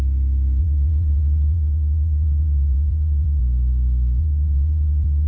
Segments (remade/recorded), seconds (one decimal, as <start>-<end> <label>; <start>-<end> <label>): 0.0-0.6 recorded; 0.6-3.4 remade; 3.4-4.2 recorded; 4.2-5.3 remade